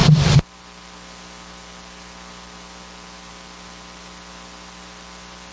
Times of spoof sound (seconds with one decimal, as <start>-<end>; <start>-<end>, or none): none